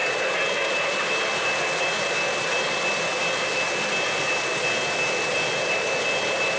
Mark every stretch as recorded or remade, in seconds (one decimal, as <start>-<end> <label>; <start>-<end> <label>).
0.0-6.6 recorded